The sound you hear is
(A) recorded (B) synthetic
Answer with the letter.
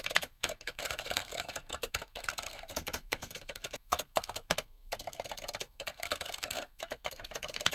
B